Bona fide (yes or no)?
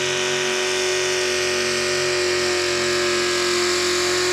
yes